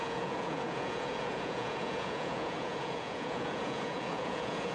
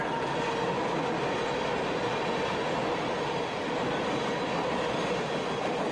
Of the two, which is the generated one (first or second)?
first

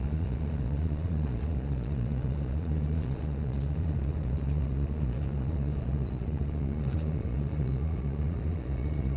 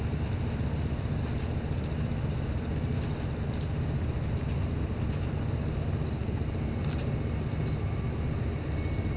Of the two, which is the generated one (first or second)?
first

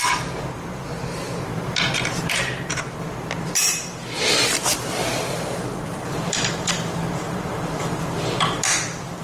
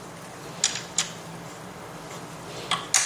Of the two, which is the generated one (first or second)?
first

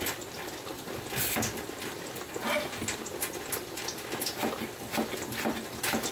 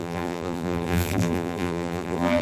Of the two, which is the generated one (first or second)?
second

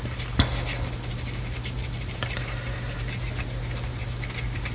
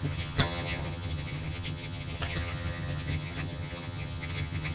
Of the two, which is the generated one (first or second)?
second